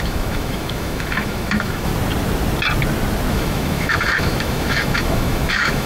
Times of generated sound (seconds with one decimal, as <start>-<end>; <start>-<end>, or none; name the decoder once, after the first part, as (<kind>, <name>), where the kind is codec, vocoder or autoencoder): 0.0-1.9 (autoencoder, DAC-VAE); 3.3-5.9